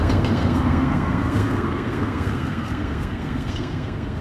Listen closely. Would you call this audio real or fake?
fake